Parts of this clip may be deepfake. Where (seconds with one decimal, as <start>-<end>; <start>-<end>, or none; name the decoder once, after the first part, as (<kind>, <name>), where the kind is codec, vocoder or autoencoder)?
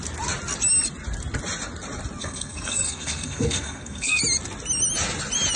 2.2-4.2 (codec, SNAC)